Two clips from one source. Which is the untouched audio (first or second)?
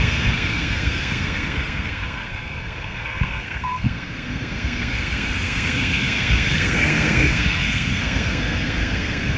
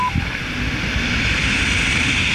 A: second